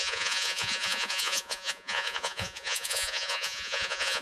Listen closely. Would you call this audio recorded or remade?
remade